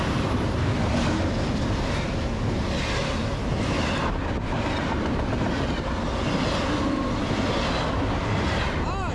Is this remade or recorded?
recorded